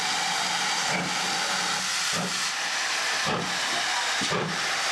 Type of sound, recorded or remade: recorded